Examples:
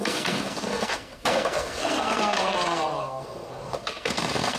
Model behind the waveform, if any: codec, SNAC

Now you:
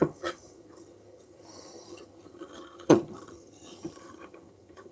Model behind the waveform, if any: vocoder, HiFi-GAN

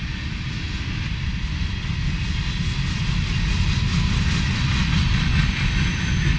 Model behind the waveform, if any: none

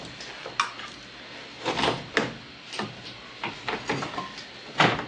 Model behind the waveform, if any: none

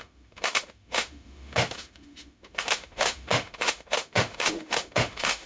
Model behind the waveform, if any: autoencoder, DAC-VAE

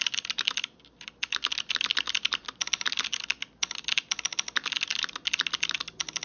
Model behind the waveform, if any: none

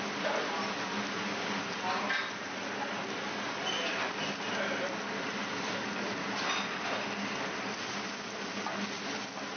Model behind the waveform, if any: none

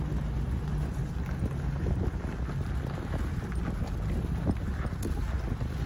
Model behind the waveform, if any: none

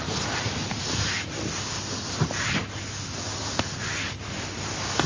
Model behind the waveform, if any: none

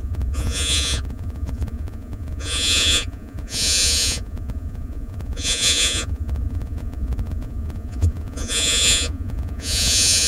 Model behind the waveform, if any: vocoder, Vocos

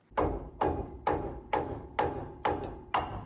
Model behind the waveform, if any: none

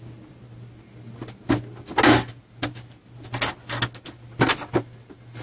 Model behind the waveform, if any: none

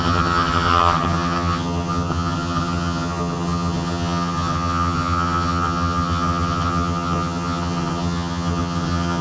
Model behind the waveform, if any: vocoder, HiFi-GAN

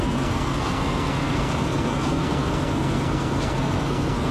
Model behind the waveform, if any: codec, SNAC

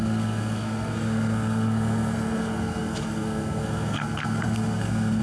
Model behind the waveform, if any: codec, SNAC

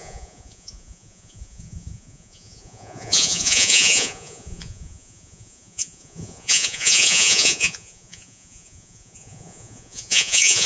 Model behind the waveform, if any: vocoder, Vocos